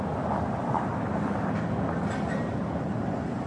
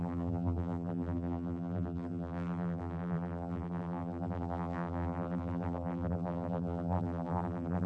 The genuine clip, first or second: first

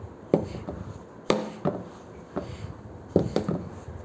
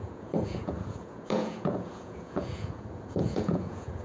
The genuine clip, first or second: first